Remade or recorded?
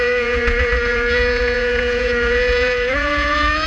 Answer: remade